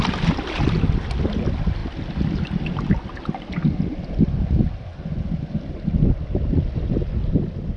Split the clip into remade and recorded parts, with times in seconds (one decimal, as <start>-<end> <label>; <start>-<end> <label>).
0.0-7.8 recorded